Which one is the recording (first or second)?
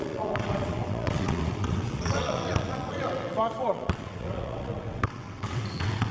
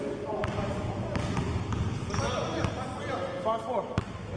second